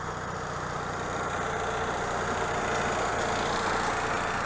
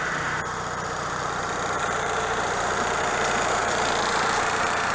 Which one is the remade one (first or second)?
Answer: second